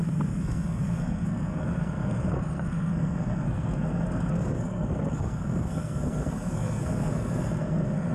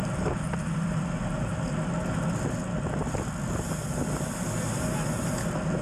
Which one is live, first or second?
second